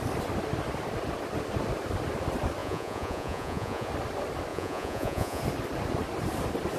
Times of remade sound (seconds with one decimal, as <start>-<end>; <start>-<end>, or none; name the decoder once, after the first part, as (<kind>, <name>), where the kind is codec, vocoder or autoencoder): 2.6-3.9 (vocoder, Vocos); 4.5-5.4